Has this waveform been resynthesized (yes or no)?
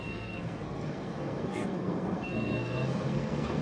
yes